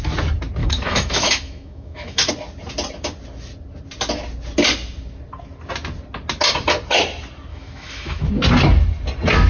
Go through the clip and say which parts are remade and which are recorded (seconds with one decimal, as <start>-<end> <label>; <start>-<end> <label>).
0.0-0.6 recorded; 0.6-2.3 remade; 2.3-7.5 recorded; 7.5-8.3 remade; 8.3-9.5 recorded

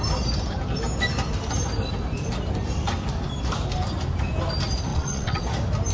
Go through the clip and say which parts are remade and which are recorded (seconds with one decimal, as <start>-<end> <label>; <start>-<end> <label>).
0.0-4.9 recorded; 4.9-5.4 remade; 5.4-5.9 recorded

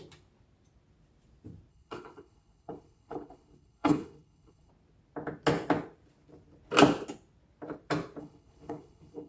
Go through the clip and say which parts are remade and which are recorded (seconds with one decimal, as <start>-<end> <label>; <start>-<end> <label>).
0.0-1.7 recorded; 1.7-4.7 remade; 4.7-8.2 recorded; 8.2-9.3 remade